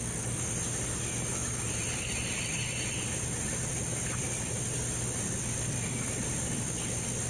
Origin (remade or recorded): recorded